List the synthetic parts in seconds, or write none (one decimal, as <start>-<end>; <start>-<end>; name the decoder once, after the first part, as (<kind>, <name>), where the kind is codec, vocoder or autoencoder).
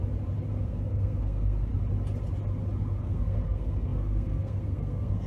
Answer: 0.6-1.7 (codec, SNAC); 3.0-5.3